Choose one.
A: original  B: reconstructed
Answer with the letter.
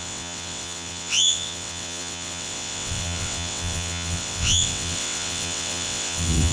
B